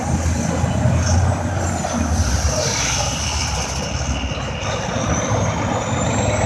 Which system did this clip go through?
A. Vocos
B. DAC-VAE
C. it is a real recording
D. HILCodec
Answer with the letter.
C